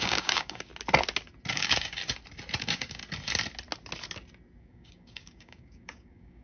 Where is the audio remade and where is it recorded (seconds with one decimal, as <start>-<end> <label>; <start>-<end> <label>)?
0.0-0.7 remade; 0.7-1.5 recorded; 1.5-2.0 remade; 2.0-2.6 recorded; 2.6-3.0 remade; 3.0-4.6 recorded; 4.6-6.4 remade